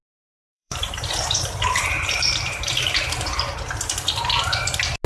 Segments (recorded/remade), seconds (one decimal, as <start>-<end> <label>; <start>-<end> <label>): 0.0-0.5 recorded; 0.5-3.6 remade; 3.6-5.1 recorded